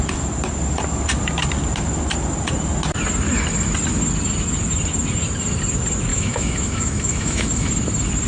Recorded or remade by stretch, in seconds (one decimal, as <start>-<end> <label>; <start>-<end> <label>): 0.0-6.1 recorded; 6.1-7.7 remade; 7.7-8.3 recorded